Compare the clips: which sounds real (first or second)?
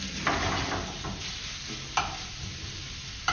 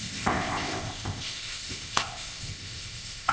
first